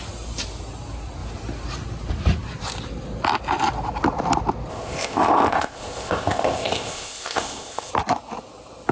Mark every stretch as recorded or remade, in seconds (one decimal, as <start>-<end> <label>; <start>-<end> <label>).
0.0-4.7 recorded; 4.7-7.9 remade; 7.9-8.9 recorded